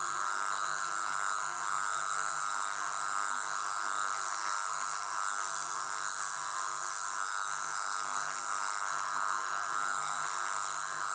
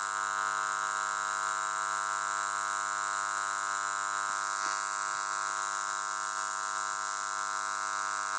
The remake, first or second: first